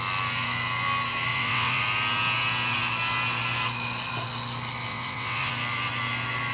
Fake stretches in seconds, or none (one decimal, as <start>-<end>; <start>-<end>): 1.3-1.8; 4.9-5.5